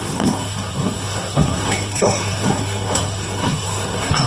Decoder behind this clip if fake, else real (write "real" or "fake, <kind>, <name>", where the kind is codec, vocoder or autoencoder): fake, codec, SNAC